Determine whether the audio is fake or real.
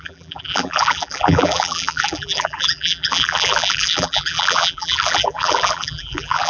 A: fake